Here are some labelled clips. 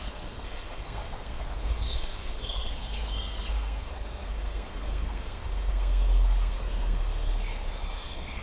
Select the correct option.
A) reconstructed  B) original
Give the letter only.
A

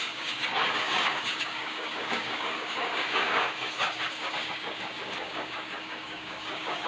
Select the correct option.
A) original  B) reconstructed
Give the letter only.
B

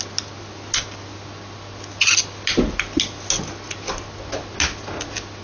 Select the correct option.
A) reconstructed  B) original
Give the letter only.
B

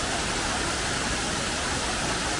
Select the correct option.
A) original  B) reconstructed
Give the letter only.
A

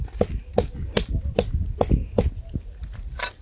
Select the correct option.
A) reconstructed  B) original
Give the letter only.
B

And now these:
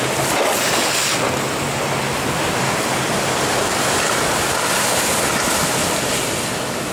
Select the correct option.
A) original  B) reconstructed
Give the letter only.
A